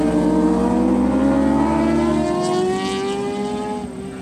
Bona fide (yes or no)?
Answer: yes